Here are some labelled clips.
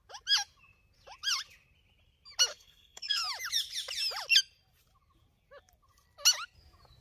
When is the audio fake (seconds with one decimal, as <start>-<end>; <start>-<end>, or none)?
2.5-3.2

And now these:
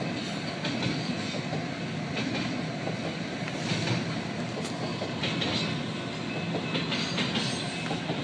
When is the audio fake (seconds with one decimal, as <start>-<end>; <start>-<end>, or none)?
none

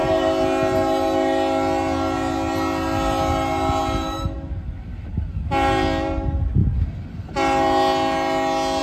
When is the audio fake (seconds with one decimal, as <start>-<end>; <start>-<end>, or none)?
none

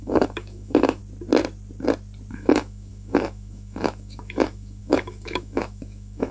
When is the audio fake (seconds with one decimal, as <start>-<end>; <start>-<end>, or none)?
0.0-1.0; 2.3-6.3

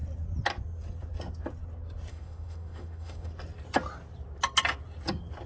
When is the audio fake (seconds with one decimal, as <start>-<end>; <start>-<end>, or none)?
2.1-3.3